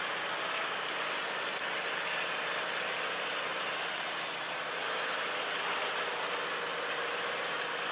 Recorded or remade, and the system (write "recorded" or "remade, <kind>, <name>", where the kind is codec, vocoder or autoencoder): recorded